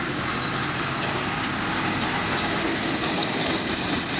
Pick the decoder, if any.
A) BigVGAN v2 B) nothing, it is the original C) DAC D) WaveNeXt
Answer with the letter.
B